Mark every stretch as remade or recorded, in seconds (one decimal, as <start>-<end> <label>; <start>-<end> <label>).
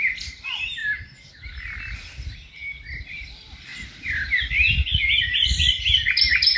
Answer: 0.0-0.8 remade; 0.8-3.1 recorded; 3.1-6.6 remade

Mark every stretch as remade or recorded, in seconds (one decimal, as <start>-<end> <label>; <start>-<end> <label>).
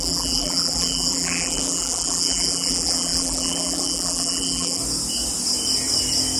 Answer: 0.0-4.8 remade; 4.8-6.4 recorded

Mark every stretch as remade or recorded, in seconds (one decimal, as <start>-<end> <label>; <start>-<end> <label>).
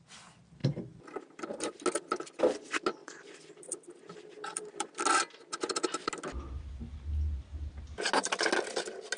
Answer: 0.0-0.6 recorded; 0.6-1.7 remade; 1.7-3.0 recorded; 3.0-5.0 remade; 5.0-9.2 recorded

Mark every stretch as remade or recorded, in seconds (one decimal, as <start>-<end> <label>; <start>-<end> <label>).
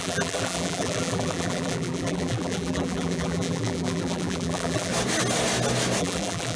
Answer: 0.0-4.9 remade; 4.9-6.0 recorded; 6.0-6.6 remade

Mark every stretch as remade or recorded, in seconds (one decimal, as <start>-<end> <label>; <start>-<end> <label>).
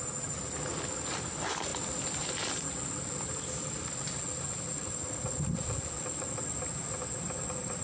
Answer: 0.0-7.8 recorded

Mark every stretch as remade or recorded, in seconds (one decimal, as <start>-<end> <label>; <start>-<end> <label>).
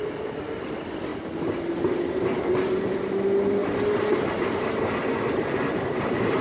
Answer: 0.0-1.1 recorded; 1.1-3.0 remade; 3.0-3.6 recorded; 3.6-6.0 remade; 6.0-6.4 recorded